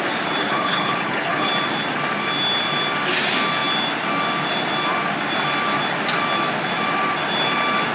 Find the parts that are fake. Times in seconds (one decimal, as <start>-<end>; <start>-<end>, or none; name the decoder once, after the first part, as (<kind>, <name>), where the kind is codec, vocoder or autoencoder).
0.4-1.5 (codec, HILCodec)